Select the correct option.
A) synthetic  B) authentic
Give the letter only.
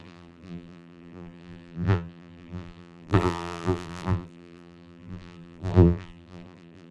A